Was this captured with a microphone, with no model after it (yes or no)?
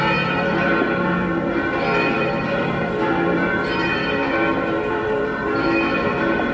no